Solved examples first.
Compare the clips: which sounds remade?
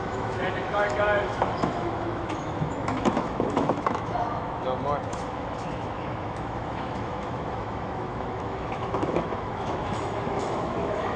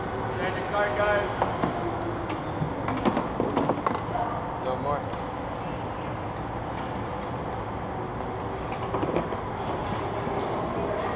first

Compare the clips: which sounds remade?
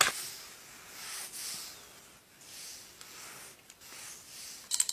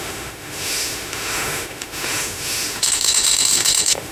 second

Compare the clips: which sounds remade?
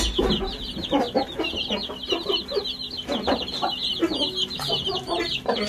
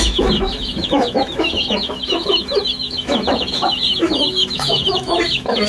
second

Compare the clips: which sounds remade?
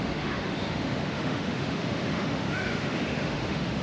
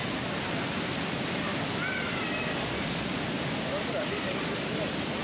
first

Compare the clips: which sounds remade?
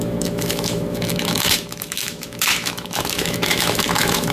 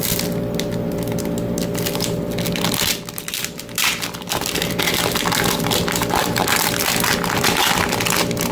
first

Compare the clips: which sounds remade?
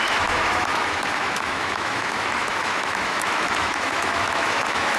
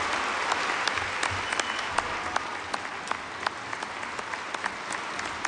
first